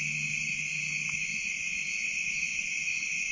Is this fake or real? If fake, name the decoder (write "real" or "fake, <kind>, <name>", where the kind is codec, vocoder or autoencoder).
real